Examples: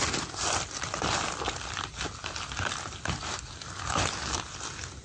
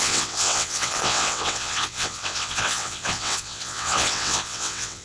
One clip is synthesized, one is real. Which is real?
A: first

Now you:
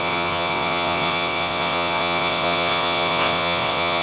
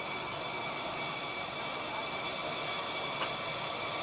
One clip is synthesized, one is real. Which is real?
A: second